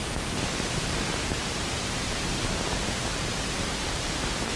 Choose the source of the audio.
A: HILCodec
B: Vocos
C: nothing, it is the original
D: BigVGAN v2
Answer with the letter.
D